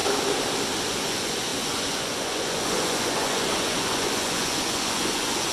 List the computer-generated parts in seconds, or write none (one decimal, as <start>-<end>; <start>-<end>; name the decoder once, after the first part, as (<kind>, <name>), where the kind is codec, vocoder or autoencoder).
0.9-5.5 (vocoder, Vocos)